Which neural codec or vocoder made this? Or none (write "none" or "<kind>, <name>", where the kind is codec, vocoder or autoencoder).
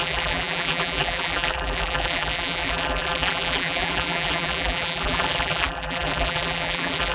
vocoder, BigVGAN v2